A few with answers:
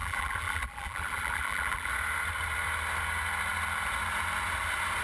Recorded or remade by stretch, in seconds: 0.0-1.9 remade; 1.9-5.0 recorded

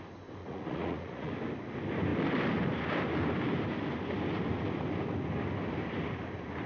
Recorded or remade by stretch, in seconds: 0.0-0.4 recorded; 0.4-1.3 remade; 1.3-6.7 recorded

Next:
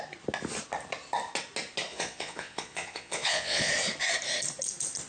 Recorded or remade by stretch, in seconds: 0.0-1.9 recorded; 1.9-3.7 remade; 3.7-5.1 recorded

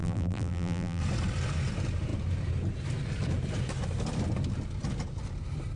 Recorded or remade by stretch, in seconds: 0.0-1.0 remade; 1.0-5.8 recorded

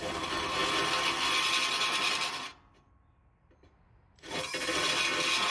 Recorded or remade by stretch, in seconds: 0.0-0.6 remade; 0.6-2.1 recorded; 2.1-5.5 remade

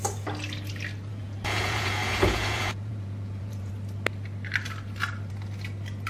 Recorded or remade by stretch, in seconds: 0.0-1.1 recorded; 1.1-3.7 remade; 3.7-6.1 recorded